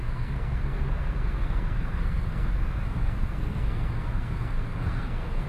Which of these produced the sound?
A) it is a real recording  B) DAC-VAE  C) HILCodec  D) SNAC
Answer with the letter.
D